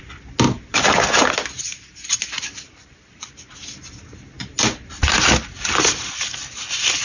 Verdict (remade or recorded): recorded